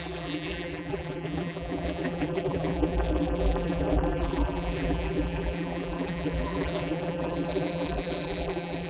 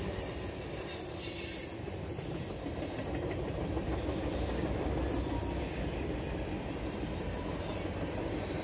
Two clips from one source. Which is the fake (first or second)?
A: first